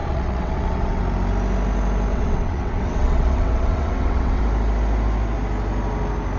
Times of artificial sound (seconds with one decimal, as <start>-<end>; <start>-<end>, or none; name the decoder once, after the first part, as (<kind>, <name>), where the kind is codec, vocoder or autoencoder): 0.0-1.0 (vocoder, WaveNeXt); 2.1-4.4